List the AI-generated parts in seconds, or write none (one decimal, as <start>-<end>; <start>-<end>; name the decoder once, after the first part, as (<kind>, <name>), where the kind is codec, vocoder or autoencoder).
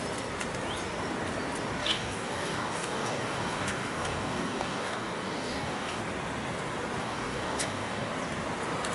1.8-6.0 (codec, DAC); 7.0-8.1